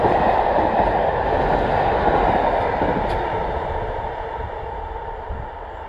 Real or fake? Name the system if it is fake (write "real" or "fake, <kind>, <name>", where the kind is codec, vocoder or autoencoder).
real